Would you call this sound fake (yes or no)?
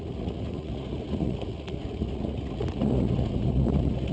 yes